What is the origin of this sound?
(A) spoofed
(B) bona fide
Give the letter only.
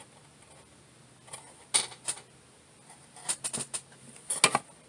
B